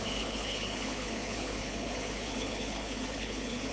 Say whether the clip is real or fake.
fake